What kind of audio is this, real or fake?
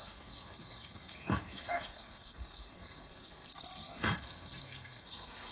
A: fake